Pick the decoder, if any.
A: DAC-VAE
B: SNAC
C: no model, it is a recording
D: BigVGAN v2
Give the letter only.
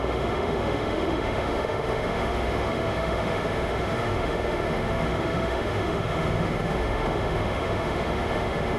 A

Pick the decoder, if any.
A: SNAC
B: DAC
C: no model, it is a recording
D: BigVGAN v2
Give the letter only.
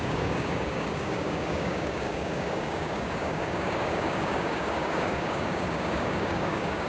B